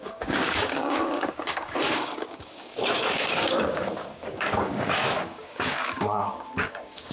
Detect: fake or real fake